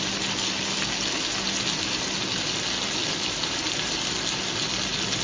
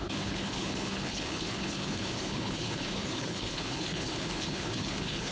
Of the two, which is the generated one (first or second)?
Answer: second